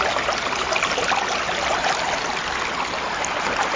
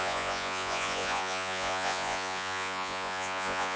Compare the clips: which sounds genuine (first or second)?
first